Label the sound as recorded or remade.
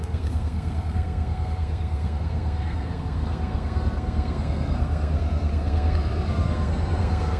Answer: remade